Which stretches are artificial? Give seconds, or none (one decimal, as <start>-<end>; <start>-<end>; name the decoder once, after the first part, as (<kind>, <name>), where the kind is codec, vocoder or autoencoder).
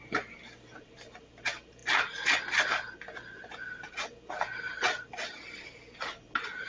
none